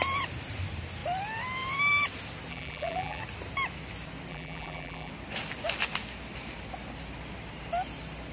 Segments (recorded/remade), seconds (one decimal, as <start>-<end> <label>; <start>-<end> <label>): 0.0-2.5 recorded; 2.5-3.2 remade; 3.2-4.3 recorded; 4.3-5.1 remade; 5.1-8.3 recorded